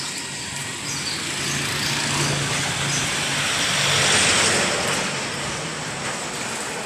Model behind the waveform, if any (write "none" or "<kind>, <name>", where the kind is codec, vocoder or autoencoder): none